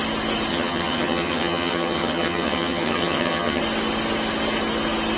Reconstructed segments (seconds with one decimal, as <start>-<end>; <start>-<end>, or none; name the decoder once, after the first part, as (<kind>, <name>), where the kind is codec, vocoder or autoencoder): 0.5-3.6 (vocoder, HiFi-GAN)